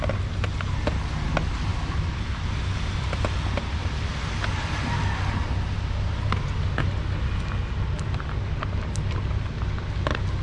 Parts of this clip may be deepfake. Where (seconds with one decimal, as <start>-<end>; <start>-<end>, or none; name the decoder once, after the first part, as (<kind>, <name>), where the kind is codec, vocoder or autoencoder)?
1.7-4.7 (vocoder, BigVGAN v2)